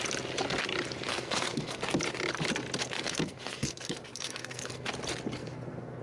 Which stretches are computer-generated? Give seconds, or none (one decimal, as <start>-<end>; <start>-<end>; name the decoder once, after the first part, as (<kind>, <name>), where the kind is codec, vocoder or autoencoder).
1.1-1.8 (codec, SNAC); 2.8-4.9; 5.4-6.0